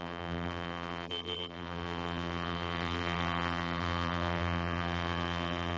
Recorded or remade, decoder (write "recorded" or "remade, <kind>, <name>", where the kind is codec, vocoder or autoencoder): remade, vocoder, BigVGAN v2